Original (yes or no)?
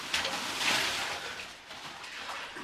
no